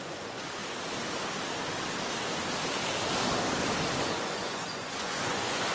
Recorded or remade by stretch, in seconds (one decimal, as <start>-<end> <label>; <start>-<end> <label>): 0.0-0.6 remade; 0.6-4.0 recorded; 4.0-5.7 remade